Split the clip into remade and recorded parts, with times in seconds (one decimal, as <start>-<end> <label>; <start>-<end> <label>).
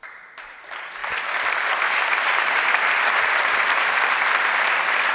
0.0-5.1 recorded